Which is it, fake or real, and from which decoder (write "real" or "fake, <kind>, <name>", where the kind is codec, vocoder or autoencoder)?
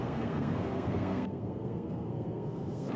fake, codec, SNAC